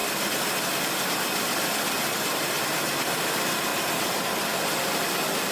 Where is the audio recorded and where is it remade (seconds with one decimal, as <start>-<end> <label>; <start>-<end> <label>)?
0.0-5.5 recorded